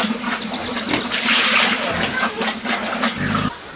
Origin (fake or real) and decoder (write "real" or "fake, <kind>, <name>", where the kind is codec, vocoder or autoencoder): real